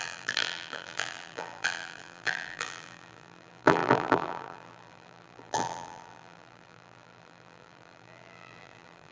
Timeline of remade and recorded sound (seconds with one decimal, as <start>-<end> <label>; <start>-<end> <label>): 0.0-9.1 remade